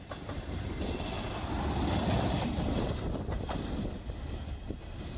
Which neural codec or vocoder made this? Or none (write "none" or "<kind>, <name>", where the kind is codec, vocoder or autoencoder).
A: none